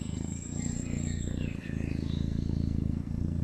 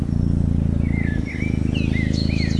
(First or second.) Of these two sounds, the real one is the second